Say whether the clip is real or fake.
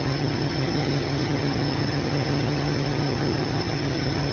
fake